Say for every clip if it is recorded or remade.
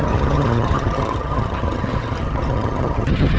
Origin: remade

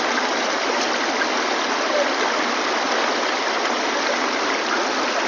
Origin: recorded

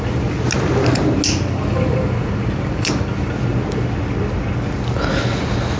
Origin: recorded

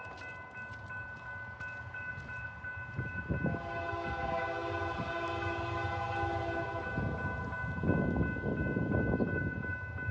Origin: recorded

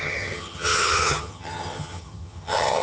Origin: remade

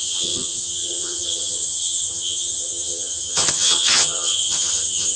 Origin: remade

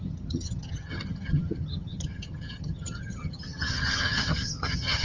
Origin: remade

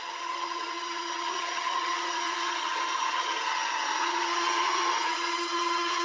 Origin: remade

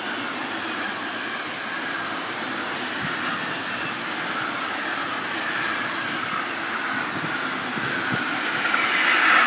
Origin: recorded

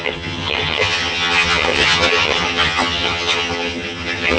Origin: remade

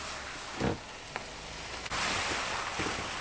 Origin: recorded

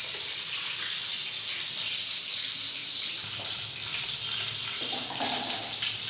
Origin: recorded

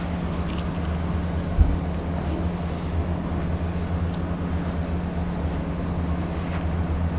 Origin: recorded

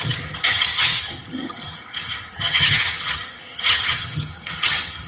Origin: remade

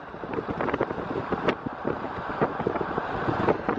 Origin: recorded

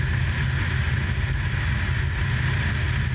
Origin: recorded